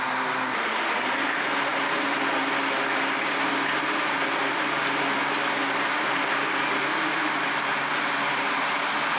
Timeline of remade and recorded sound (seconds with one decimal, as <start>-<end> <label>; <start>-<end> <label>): 0.0-9.2 recorded